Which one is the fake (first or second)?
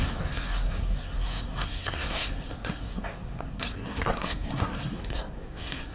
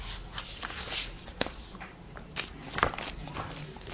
first